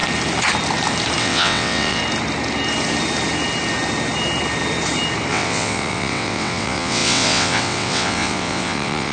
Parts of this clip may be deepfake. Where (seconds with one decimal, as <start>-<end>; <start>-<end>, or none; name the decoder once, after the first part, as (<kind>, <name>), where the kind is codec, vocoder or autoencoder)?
1.2-2.0 (vocoder, WaveNeXt); 5.3-9.1

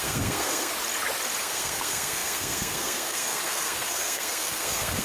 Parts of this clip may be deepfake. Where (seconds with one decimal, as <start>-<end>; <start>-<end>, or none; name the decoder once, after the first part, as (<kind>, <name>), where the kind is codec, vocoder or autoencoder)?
0.0-0.7 (codec, SNAC); 1.4-5.0

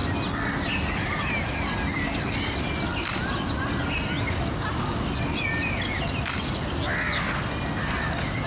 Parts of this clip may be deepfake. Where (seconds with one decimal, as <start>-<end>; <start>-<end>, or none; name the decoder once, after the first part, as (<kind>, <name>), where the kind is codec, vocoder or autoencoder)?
none

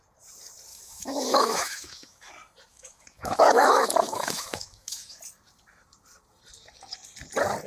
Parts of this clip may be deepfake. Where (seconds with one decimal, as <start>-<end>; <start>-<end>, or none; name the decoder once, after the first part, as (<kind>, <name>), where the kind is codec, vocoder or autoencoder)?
0.7-2.3 (autoencoder, DAC-VAE); 2.7-5.2

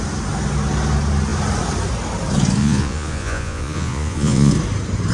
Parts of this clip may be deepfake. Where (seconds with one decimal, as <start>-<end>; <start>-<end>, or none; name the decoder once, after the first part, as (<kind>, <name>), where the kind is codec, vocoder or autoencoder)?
2.6-4.5 (vocoder, Vocos)

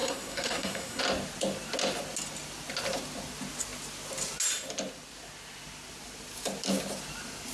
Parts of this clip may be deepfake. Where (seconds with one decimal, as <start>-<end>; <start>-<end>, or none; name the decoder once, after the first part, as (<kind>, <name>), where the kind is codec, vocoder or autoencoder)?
0.0-1.0 (codec, SNAC)

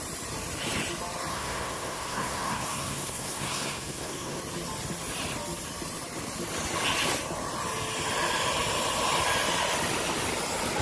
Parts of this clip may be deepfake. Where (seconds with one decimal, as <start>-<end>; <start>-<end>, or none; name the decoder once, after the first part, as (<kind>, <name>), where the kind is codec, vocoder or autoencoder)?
1.3-4.4 (codec, SNAC)

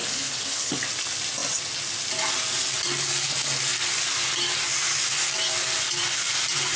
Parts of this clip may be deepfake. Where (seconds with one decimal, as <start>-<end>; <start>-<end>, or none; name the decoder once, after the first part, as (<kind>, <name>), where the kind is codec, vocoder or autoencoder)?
0.0-0.7 (codec, HILCodec)